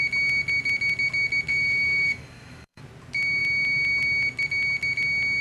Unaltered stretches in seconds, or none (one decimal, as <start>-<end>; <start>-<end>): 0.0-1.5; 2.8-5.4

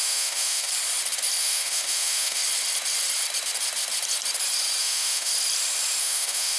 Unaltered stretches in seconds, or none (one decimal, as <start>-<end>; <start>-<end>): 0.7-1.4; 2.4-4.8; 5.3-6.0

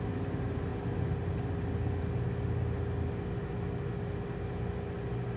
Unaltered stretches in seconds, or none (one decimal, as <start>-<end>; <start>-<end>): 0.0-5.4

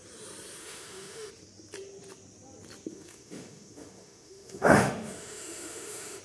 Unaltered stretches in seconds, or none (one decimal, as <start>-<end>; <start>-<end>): 0.0-0.6; 1.3-2.9